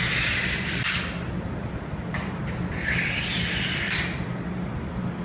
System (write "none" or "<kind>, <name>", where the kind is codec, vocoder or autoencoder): none